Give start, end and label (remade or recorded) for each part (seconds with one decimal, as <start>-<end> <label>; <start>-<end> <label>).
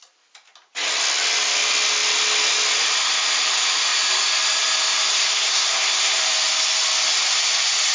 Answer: 0.0-5.1 recorded; 5.1-6.2 remade; 6.2-7.9 recorded